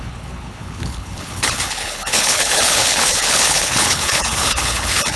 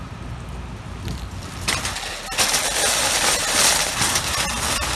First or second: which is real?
second